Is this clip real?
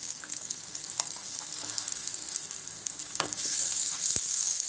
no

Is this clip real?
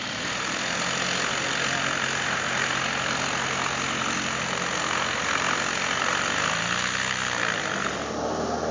yes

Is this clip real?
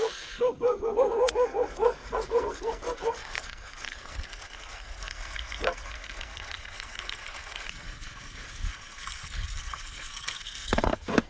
no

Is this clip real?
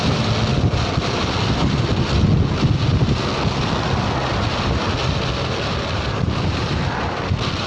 yes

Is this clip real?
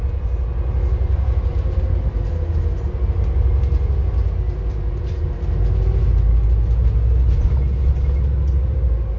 yes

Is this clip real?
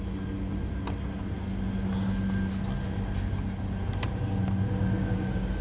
yes